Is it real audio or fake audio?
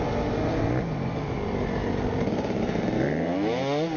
real